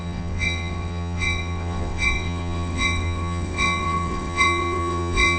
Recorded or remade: remade